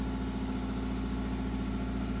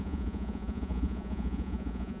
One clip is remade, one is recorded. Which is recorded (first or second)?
first